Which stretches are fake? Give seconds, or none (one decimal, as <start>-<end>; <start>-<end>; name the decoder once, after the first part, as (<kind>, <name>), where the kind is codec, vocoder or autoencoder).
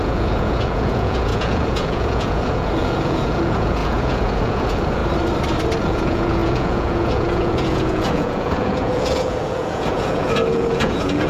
0.0-5.0 (vocoder, Vocos); 5.8-11.3